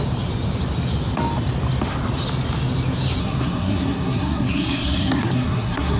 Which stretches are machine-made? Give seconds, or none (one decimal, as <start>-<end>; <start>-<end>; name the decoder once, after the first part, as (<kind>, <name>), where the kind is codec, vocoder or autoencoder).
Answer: 3.2-6.0 (codec, SNAC)